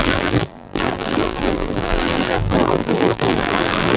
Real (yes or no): no